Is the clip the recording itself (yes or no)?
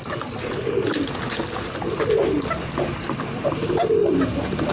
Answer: yes